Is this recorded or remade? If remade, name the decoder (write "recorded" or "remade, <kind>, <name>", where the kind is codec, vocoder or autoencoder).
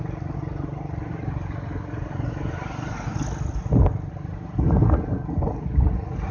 recorded